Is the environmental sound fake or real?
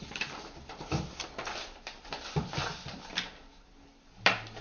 real